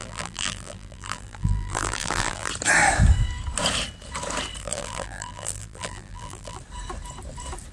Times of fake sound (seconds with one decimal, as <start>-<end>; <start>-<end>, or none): 0.0-2.5; 4.6-6.6